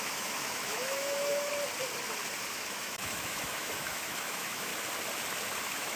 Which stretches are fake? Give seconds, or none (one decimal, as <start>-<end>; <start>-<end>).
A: 0.0-1.5; 2.5-4.7; 5.6-6.0

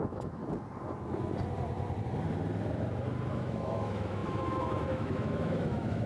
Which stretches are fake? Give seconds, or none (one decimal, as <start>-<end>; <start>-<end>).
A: 0.0-0.4; 3.3-6.1

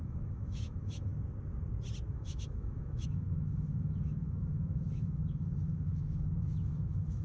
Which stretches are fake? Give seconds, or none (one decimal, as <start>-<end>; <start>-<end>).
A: 0.0-1.1; 2.1-7.2

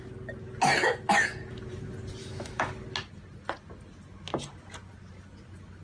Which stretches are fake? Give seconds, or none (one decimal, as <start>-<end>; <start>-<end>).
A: 2.2-2.7

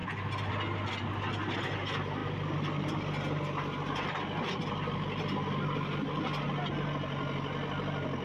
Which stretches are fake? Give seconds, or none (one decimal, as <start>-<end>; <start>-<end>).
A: none